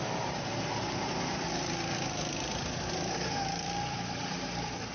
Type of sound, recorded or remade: remade